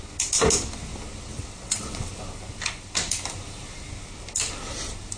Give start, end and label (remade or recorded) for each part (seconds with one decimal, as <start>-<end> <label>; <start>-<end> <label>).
0.0-1.3 recorded; 1.3-2.1 remade; 2.1-5.2 recorded